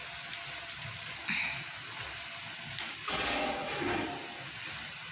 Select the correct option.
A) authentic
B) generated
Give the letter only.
A